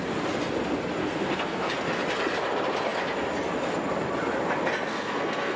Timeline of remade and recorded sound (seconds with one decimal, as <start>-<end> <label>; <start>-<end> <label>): 0.0-1.0 recorded; 1.0-1.6 remade; 1.6-4.9 recorded; 4.9-5.6 remade